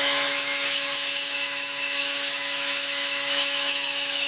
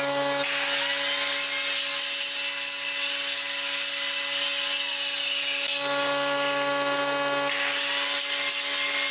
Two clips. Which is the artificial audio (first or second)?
first